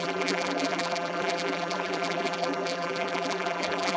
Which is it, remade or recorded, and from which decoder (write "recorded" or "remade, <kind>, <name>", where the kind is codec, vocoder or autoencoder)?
remade, vocoder, BigVGAN v2